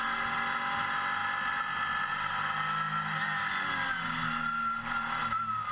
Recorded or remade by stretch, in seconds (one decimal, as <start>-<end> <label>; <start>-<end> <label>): 0.0-5.7 recorded